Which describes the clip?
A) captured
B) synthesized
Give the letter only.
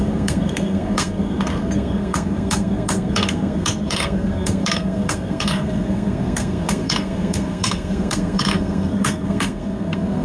B